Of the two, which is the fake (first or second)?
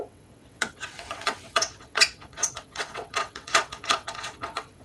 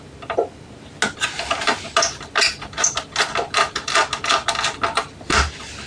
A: first